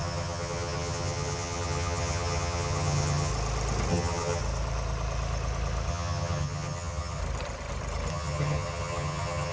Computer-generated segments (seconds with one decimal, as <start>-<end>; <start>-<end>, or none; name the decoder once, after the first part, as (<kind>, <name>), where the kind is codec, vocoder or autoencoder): 0.0-3.3 (vocoder, HiFi-GAN); 3.9-4.4; 5.9-7.2; 8.1-9.5